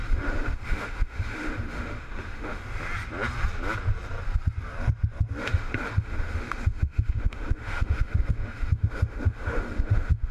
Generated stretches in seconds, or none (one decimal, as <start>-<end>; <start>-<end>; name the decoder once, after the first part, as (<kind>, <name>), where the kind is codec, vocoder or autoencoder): 0.0-2.6 (autoencoder, DAC-VAE); 5.4-10.3